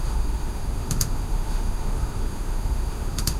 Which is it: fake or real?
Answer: fake